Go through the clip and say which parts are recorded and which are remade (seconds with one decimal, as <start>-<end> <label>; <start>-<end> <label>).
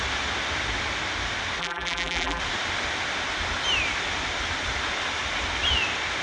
0.0-1.6 recorded; 1.6-2.4 remade; 2.4-6.2 recorded